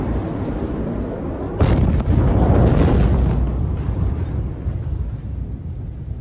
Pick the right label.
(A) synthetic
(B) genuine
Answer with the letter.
B